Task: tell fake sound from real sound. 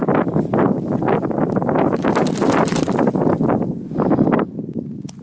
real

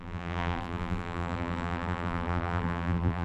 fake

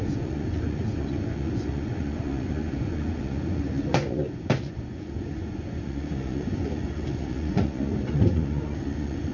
fake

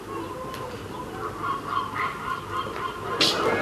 real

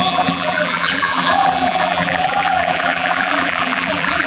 fake